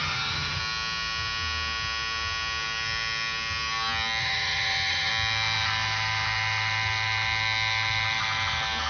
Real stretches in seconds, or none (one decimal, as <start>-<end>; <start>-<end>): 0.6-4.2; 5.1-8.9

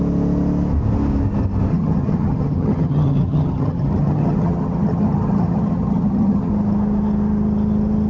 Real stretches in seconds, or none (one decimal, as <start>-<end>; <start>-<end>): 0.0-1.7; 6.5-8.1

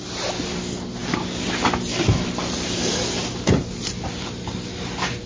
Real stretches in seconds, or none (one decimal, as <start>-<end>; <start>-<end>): 0.0-5.3